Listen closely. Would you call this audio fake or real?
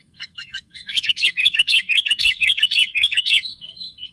fake